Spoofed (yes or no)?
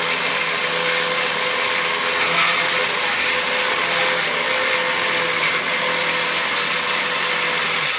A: no